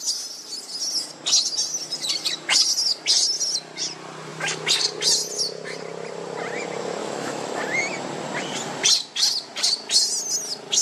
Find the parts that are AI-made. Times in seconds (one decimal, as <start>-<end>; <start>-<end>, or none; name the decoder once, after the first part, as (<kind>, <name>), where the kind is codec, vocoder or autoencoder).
7.0-7.6 (autoencoder, DAC-VAE)

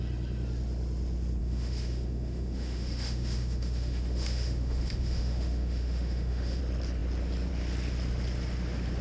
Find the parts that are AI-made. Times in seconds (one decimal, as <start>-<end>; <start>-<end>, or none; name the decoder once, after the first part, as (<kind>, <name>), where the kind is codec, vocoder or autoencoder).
1.4-6.6 (autoencoder, DAC-VAE)

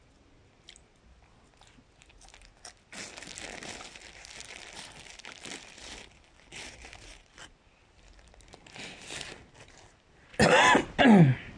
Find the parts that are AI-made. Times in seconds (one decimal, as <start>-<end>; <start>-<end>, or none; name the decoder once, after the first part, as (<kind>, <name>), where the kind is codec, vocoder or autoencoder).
none

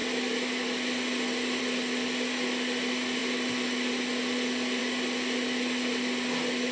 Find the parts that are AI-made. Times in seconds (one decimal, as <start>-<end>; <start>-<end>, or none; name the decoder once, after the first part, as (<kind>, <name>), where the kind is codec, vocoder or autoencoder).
none

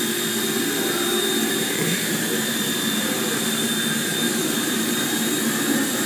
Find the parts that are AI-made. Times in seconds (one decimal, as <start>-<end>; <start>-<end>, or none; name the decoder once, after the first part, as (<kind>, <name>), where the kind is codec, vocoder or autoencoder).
1.1-3.6 (vocoder, BigVGAN v2); 4.1-5.3

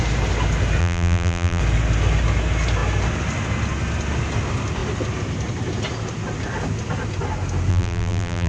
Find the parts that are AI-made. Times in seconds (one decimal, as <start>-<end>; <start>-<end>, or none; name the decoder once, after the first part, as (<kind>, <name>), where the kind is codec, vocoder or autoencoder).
0.8-1.6 (vocoder, BigVGAN v2); 7.7-8.5

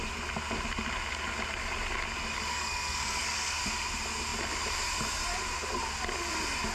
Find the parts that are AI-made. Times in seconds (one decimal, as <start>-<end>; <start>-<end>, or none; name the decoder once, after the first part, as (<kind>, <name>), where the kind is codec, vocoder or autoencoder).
2.5-3.6 (codec, SNAC)